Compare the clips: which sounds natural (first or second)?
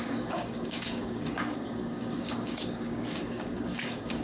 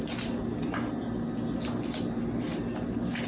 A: second